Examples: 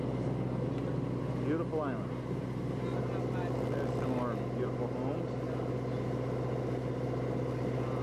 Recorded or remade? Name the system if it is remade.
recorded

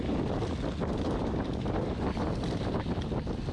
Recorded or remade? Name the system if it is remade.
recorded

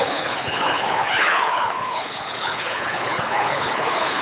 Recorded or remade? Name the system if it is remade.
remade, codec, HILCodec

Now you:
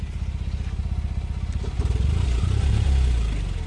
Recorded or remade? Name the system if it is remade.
recorded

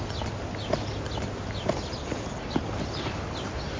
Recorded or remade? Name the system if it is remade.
recorded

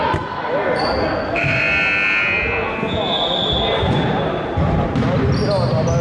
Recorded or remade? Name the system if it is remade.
recorded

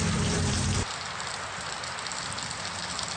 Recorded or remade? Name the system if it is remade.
recorded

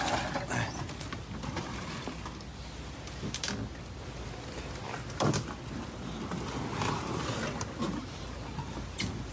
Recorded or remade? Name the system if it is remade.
recorded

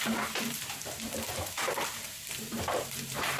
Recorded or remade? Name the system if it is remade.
remade, vocoder, BigVGAN v2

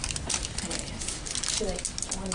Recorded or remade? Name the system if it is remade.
recorded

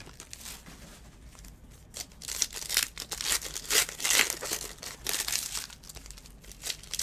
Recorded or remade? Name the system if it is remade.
recorded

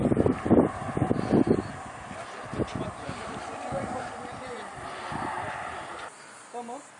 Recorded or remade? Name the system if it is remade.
recorded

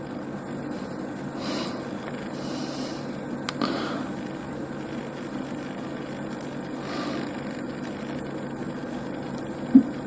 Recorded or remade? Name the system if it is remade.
recorded